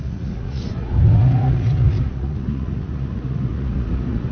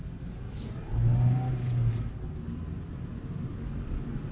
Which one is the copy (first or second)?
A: first